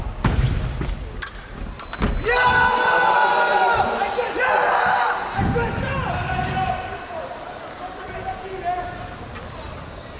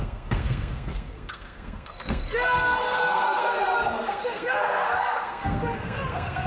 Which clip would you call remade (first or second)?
second